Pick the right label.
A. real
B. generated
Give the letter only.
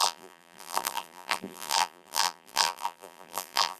B